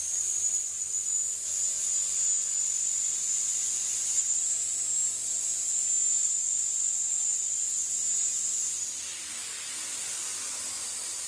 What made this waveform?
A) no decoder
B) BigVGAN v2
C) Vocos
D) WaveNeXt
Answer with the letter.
A